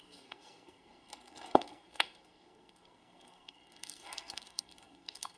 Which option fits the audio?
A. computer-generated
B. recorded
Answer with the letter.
A